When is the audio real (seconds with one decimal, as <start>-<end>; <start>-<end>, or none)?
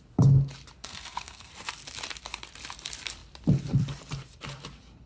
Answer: 0.0-0.8; 1.5-5.1